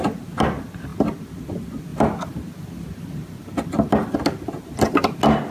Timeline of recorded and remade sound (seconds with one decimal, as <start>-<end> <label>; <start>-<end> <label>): 0.0-5.5 recorded